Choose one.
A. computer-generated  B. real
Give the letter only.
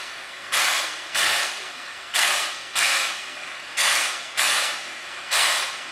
A